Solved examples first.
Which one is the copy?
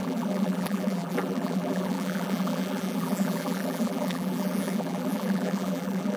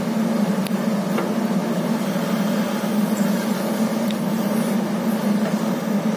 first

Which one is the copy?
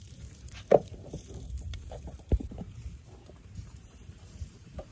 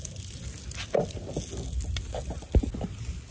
first